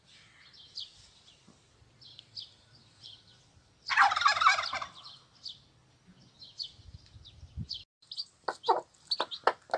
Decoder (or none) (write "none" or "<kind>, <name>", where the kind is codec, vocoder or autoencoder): none